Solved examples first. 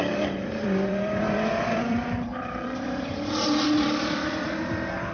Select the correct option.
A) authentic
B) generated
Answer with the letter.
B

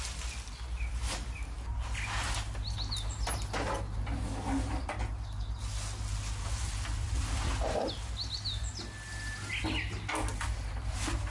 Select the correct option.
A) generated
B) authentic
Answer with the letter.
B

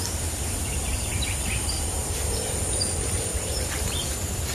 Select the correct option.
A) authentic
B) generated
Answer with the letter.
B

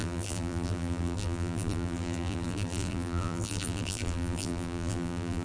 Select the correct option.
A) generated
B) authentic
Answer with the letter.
A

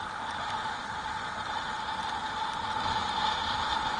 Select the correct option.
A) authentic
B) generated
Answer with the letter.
B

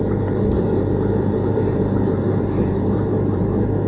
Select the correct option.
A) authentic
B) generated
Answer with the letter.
B